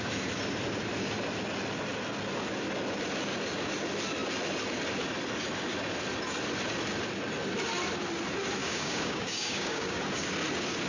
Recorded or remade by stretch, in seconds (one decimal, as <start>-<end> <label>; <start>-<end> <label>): 0.0-8.6 recorded; 8.6-10.0 remade; 10.0-10.9 recorded

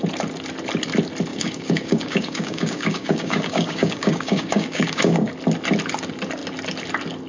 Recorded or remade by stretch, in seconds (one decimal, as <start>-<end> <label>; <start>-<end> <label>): 0.0-1.3 recorded; 1.3-5.3 remade; 5.3-7.3 recorded

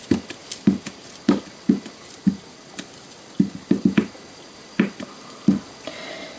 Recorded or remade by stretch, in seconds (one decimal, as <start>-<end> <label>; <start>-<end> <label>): 0.0-6.4 recorded

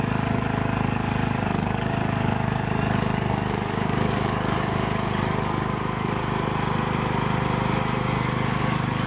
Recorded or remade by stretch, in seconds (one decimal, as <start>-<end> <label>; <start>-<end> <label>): 0.0-6.2 remade; 6.2-8.6 recorded; 8.6-9.1 remade

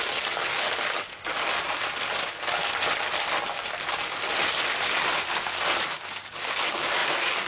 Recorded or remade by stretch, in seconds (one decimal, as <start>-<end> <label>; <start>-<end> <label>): 0.0-1.3 remade; 1.3-5.8 recorded; 5.8-7.5 remade

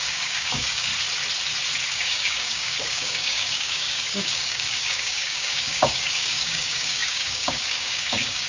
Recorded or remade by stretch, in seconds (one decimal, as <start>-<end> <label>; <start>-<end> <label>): 0.0-0.9 remade; 0.9-1.9 recorded; 1.9-8.5 remade